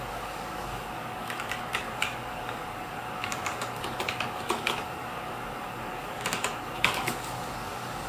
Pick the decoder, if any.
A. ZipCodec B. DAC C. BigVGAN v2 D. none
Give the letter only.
B